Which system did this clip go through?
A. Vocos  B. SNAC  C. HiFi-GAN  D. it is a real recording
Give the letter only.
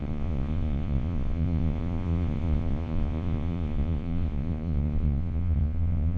A